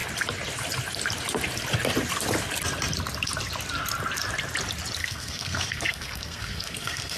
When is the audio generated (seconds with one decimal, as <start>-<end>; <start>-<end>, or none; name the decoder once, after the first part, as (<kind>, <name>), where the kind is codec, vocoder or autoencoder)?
5.0-7.2 (codec, SNAC)